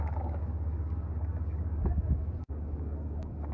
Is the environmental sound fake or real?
fake